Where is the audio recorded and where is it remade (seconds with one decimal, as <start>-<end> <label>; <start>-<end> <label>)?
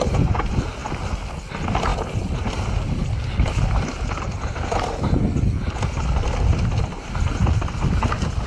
0.0-8.5 recorded